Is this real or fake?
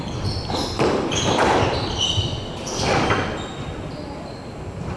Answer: real